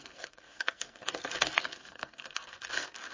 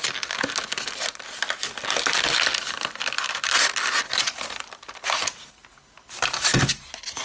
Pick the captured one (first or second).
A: second